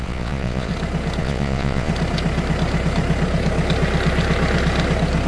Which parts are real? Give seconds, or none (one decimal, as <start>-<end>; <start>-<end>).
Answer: 0.7-1.2; 1.9-5.3